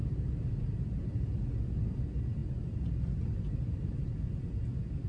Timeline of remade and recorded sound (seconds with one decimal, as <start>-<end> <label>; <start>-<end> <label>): 0.0-2.4 recorded; 2.4-4.0 remade; 4.0-5.1 recorded